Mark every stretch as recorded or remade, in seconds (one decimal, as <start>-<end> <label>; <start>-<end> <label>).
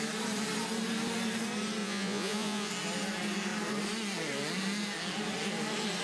0.0-1.8 recorded; 1.8-2.7 remade; 2.7-6.0 recorded